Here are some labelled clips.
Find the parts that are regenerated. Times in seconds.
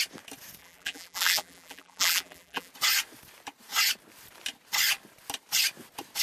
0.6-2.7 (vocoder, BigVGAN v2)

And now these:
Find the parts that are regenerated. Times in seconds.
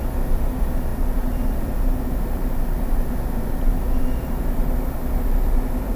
0.9-3.4 (vocoder, BigVGAN v2)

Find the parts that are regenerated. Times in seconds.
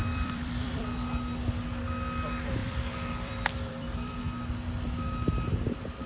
0.0-0.8 (vocoder, BigVGAN v2); 2.6-4.2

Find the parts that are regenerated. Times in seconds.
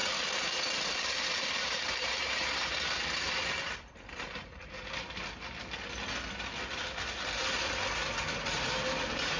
0.0-5.2 (vocoder, BigVGAN v2)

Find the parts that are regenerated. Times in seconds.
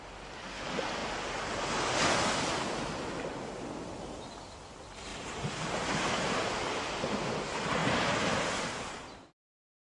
5.1-7.0 (vocoder, BigVGAN v2); 7.8-9.9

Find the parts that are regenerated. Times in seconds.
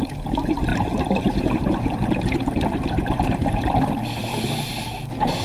0.7-3.9 (vocoder, BigVGAN v2)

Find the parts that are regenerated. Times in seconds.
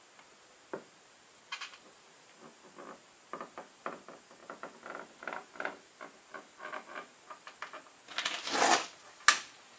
none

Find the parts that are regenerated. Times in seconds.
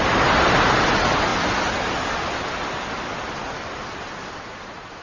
0.0-0.9 (vocoder, BigVGAN v2)